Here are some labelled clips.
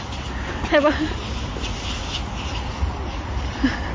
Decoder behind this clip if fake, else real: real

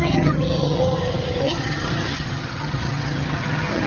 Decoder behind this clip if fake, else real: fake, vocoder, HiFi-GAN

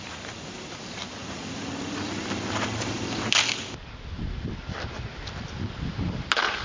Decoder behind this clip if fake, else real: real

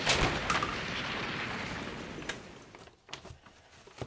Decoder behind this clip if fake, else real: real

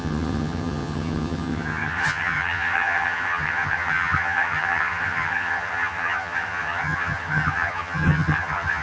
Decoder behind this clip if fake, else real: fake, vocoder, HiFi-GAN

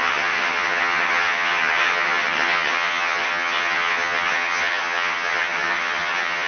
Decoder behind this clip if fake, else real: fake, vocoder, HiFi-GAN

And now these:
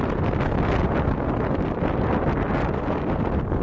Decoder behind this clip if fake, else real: real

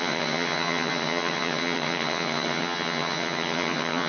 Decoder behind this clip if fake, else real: fake, vocoder, HiFi-GAN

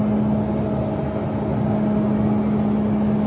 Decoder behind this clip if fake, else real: real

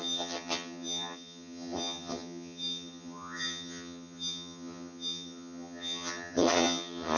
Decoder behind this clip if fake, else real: fake, vocoder, HiFi-GAN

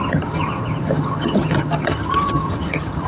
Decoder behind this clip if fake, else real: fake, vocoder, HiFi-GAN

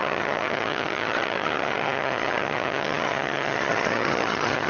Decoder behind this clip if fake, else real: fake, vocoder, HiFi-GAN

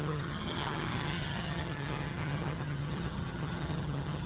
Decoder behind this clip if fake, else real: fake, vocoder, HiFi-GAN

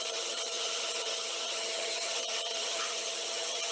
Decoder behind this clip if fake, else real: fake, vocoder, HiFi-GAN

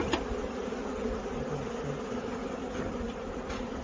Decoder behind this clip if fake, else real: real